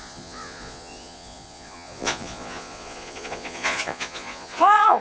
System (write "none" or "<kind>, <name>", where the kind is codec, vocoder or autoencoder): vocoder, Vocos